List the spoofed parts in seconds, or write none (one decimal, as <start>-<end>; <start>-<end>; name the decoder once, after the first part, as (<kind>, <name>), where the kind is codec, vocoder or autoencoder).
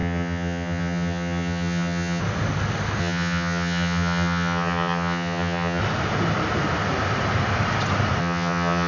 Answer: 0.0-2.2 (vocoder, HiFi-GAN); 3.0-5.8; 8.2-8.9